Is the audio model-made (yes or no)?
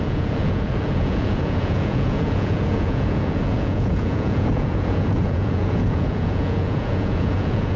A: yes